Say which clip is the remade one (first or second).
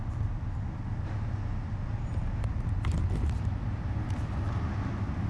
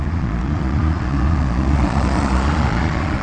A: second